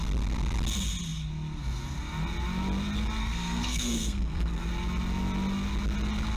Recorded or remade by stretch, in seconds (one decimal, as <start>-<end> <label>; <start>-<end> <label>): 0.0-3.2 recorded; 3.2-4.7 remade; 4.7-6.4 recorded